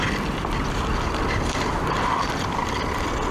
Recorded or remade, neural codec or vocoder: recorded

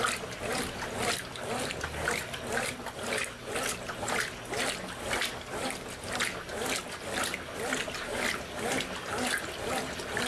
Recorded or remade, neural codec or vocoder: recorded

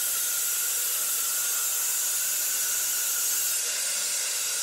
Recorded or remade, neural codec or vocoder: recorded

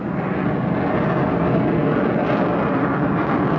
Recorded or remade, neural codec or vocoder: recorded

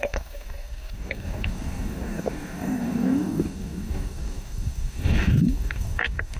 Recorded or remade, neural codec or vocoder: remade, codec, DAC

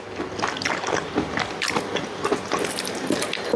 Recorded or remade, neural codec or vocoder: recorded